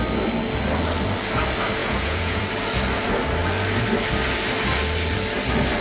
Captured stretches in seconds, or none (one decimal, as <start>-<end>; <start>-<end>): 0.0-1.8; 2.4-5.8